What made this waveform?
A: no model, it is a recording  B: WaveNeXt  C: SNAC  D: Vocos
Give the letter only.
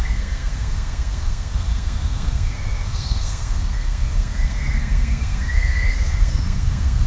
C